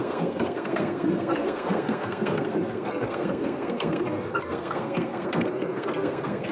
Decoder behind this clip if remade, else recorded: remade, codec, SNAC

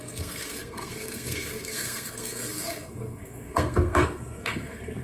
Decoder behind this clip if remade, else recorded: remade, codec, SNAC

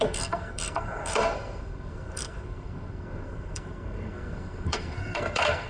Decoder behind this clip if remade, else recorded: remade, codec, SNAC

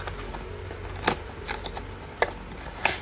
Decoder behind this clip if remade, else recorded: recorded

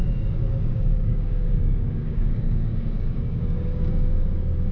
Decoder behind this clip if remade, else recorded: remade, codec, DAC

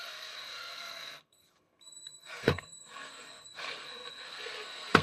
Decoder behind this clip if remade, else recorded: remade, codec, SNAC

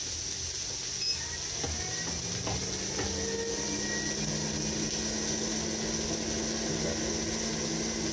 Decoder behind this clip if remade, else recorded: recorded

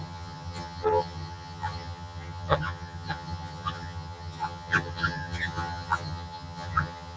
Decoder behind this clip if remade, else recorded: remade, vocoder, HiFi-GAN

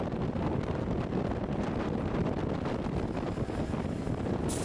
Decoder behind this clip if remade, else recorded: remade, vocoder, BigVGAN v2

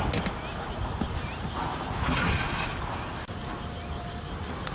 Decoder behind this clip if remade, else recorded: recorded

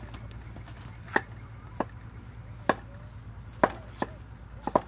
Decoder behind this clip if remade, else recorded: recorded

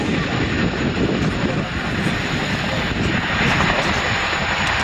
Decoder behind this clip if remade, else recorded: recorded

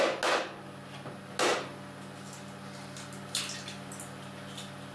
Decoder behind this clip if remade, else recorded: recorded